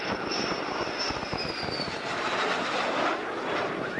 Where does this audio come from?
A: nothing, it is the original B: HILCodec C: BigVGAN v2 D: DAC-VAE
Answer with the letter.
C